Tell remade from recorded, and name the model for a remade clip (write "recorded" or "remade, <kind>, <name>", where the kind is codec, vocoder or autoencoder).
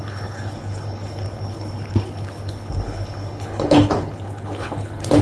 remade, codec, HILCodec